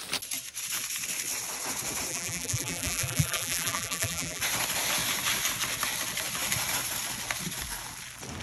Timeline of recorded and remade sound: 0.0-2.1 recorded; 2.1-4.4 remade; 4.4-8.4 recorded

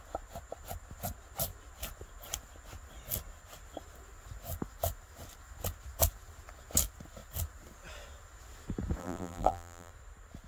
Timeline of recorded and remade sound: 0.0-9.0 recorded; 9.0-9.9 remade; 9.9-10.5 recorded

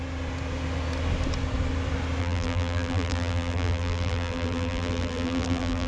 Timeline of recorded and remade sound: 0.0-2.2 recorded; 2.2-5.9 remade

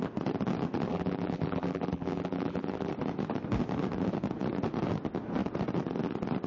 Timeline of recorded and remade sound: 0.0-0.9 recorded; 0.9-2.9 remade; 2.9-6.5 recorded